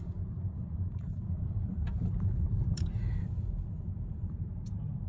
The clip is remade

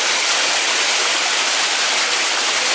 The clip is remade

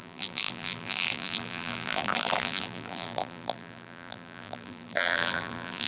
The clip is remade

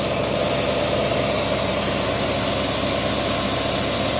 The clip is recorded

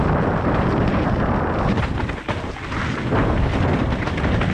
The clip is recorded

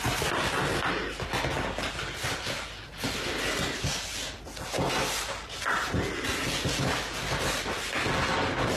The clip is recorded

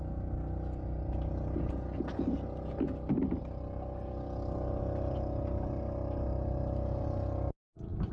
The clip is recorded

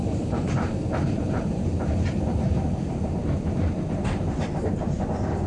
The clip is remade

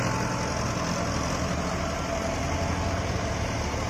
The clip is recorded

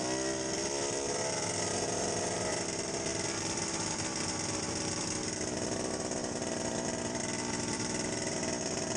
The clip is remade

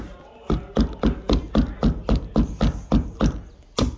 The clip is recorded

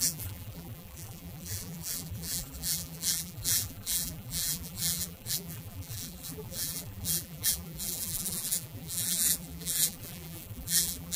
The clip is remade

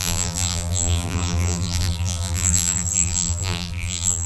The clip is remade